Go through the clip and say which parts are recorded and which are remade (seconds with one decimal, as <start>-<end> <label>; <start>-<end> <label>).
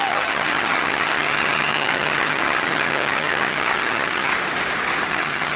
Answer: 0.0-4.3 remade; 4.3-5.1 recorded; 5.1-5.6 remade